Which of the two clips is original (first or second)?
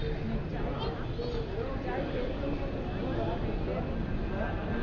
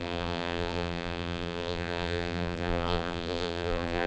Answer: first